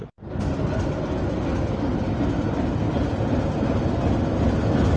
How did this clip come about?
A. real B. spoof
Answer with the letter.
A